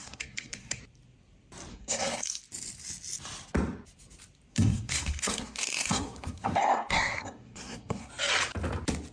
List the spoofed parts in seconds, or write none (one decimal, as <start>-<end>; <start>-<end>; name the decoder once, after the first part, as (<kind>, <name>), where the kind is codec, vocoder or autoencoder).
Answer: 0.0-0.8 (codec, SNAC); 1.7-2.4; 4.5-8.1